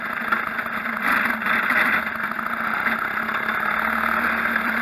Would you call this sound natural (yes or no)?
yes